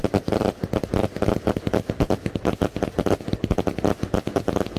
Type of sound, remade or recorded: recorded